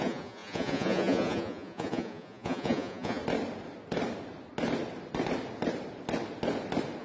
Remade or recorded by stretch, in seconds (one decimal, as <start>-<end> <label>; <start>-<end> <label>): 0.0-3.2 remade; 3.2-7.0 recorded